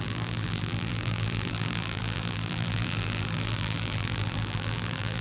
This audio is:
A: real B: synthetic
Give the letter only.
B